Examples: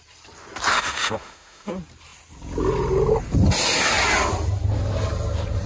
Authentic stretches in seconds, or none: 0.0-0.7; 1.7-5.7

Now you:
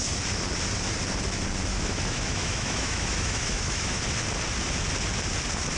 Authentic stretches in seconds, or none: 0.0-1.7; 4.0-5.8

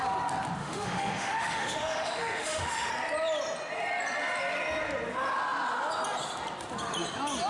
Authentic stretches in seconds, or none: 0.0-0.6; 2.9-7.5

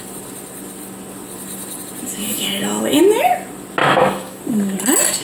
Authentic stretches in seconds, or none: 0.0-2.2; 3.0-3.8; 4.4-5.2